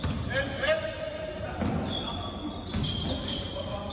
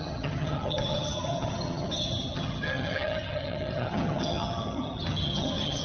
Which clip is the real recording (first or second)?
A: first